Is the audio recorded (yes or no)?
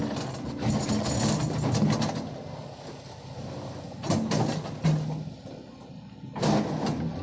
yes